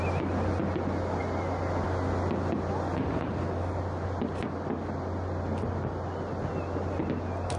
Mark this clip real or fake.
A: real